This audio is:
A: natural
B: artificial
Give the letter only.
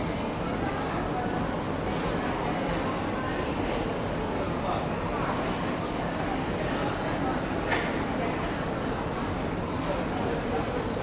A